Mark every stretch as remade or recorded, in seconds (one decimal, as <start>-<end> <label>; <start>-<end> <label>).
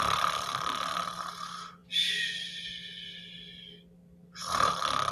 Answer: 0.0-5.1 recorded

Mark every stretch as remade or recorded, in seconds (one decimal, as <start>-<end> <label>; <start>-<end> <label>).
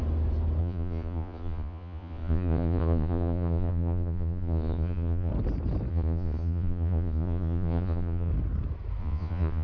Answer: 0.0-0.6 recorded; 0.6-5.3 remade; 5.3-5.9 recorded; 5.9-8.3 remade; 8.3-9.0 recorded; 9.0-9.6 remade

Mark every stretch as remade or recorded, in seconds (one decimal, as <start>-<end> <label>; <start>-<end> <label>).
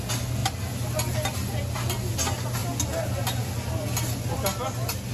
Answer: 0.0-5.1 recorded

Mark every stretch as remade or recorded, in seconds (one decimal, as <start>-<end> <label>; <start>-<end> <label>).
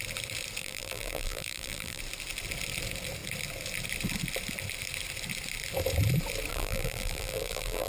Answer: 0.0-0.6 recorded; 0.6-2.0 remade; 2.0-6.5 recorded; 6.5-7.9 remade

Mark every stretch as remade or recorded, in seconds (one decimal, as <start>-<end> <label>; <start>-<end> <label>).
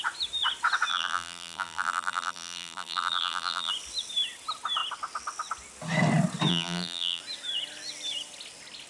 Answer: 0.0-0.9 recorded; 0.9-3.7 remade; 3.7-6.5 recorded; 6.5-7.2 remade; 7.2-8.9 recorded